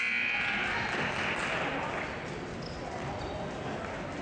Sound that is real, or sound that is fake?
real